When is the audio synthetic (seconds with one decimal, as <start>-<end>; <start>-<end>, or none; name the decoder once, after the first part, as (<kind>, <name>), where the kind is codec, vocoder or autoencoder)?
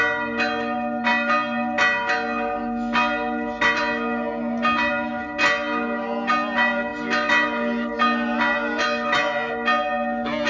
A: none